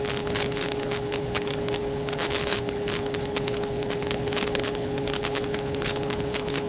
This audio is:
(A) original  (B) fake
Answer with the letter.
B